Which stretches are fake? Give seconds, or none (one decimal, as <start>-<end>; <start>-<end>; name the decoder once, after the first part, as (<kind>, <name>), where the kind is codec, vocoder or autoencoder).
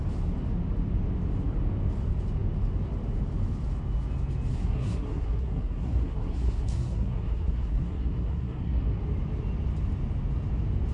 4.5-9.0 (codec, SNAC)